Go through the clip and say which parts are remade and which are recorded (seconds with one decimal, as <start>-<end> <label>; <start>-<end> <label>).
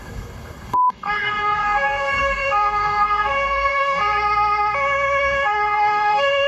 0.0-4.0 remade; 4.0-5.2 recorded; 5.2-6.5 remade